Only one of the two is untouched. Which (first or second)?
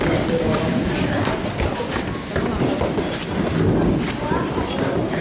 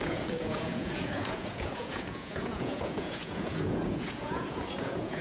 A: first